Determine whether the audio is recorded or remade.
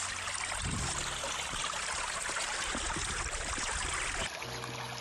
recorded